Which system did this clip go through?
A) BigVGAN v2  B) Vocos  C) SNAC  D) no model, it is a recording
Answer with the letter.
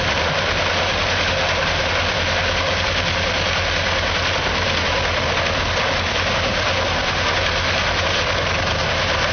A